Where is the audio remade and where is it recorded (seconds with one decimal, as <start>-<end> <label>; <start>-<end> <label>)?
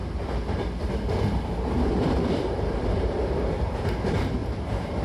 0.0-1.9 recorded; 1.9-3.3 remade; 3.3-4.4 recorded; 4.4-5.0 remade